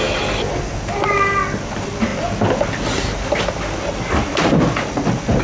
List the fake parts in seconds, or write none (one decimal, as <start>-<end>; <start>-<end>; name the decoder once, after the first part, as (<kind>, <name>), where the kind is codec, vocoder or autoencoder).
none

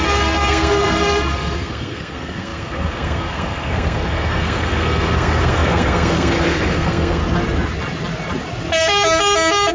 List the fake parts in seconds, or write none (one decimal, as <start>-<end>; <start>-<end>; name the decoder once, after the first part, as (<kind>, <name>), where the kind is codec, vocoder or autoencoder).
0.0-7.2 (codec, SNAC)

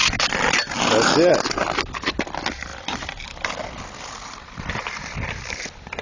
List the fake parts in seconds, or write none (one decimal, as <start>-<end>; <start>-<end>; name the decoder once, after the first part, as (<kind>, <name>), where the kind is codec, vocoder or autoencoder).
none

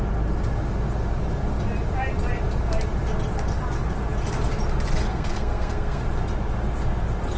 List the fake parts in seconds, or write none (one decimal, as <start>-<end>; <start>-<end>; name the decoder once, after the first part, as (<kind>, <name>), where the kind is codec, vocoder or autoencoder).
5.1-6.0 (codec, SNAC)

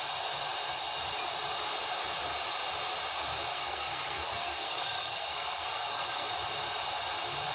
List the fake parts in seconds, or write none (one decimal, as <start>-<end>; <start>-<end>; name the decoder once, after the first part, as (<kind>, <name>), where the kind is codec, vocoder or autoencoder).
3.5-6.3 (codec, SNAC)

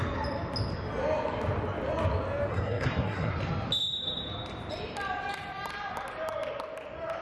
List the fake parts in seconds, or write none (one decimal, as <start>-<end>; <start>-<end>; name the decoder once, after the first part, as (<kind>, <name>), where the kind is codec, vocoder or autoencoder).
2.5-3.3 (codec, SNAC)